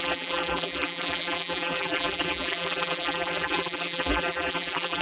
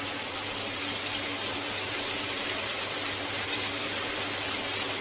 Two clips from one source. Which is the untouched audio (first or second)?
second